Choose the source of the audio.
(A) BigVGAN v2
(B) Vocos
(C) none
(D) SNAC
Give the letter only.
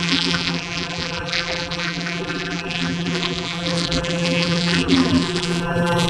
A